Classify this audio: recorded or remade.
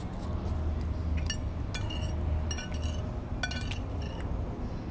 recorded